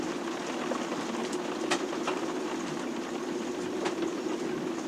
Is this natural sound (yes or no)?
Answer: yes